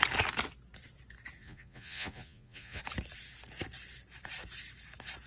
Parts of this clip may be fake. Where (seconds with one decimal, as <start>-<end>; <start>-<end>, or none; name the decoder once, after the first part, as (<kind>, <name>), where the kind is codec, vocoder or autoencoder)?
1.4-2.8 (vocoder, Vocos)